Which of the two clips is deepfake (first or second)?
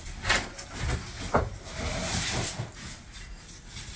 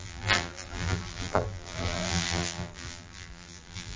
second